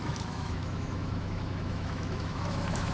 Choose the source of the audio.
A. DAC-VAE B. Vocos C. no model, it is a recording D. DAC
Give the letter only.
A